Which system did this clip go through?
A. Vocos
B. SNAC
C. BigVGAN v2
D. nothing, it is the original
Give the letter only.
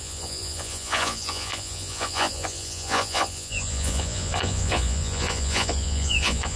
A